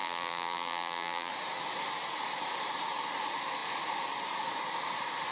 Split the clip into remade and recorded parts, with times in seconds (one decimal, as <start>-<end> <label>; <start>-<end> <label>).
0.0-1.3 remade; 1.3-5.3 recorded